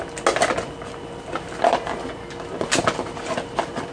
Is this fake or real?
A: real